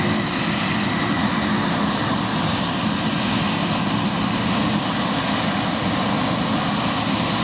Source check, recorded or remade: recorded